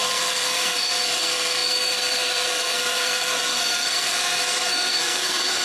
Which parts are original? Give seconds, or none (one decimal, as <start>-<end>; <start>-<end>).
none